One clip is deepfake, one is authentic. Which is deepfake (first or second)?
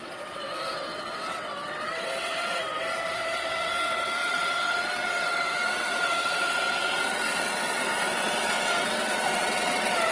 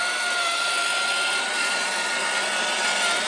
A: first